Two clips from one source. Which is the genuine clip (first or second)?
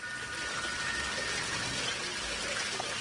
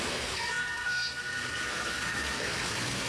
first